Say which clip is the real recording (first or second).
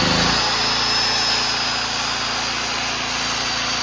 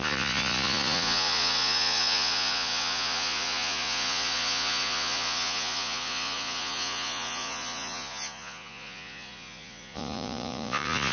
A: first